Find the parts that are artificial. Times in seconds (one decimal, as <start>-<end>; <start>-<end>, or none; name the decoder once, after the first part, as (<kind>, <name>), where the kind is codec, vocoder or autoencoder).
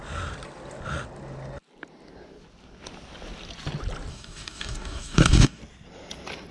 4.1-5.6 (codec, DAC)